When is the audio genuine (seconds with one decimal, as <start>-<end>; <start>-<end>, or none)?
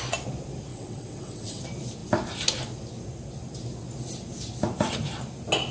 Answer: 0.0-0.7; 1.6-5.7